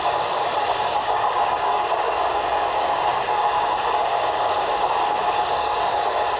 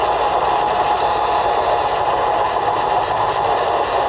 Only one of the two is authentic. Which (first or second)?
second